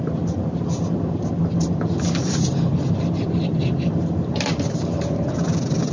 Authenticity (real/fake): fake